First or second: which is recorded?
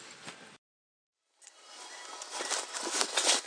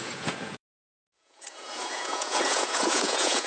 first